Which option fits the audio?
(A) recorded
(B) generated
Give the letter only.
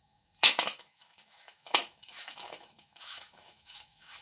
B